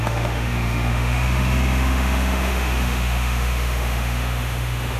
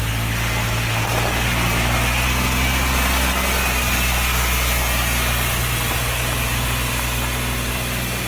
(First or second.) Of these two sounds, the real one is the second